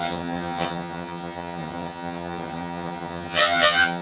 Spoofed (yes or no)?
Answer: yes